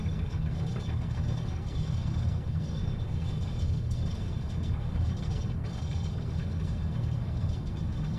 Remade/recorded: remade